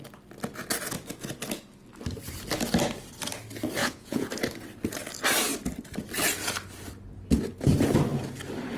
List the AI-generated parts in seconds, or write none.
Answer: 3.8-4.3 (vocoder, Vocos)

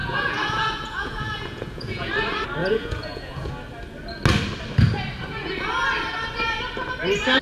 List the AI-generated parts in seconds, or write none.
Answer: 0.0-2.1 (vocoder, Vocos); 2.6-3.5

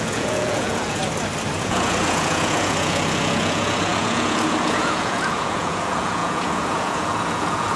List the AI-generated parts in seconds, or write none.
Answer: 0.0-1.0 (vocoder, Vocos); 1.6-7.8